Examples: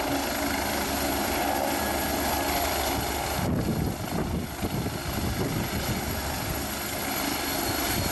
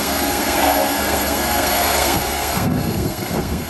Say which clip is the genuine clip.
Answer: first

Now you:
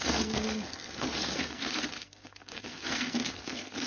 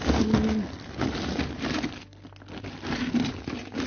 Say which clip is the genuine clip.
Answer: second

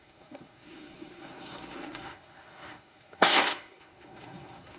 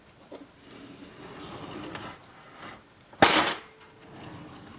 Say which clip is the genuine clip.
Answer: second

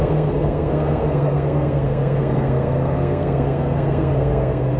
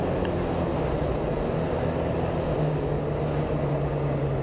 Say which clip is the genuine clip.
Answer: second